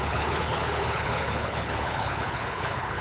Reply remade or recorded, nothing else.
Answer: remade